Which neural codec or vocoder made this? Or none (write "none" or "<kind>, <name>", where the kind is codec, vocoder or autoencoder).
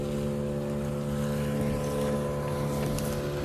none